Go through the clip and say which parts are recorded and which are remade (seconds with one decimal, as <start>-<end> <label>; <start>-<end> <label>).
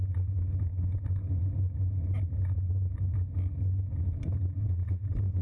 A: 0.0-5.4 recorded